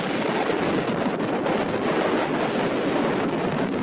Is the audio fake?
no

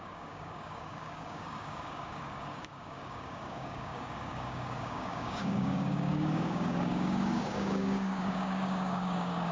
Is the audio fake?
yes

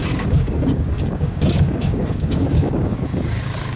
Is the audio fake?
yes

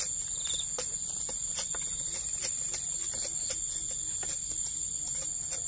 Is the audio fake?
no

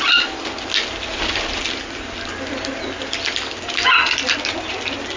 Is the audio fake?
no